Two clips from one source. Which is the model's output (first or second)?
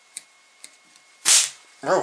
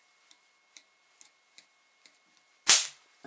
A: first